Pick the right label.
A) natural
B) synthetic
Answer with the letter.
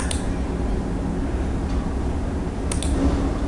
A